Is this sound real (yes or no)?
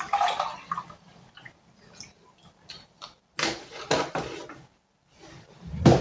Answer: yes